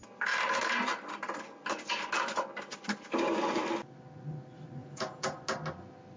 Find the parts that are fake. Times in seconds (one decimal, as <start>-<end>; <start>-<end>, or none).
4.8-5.4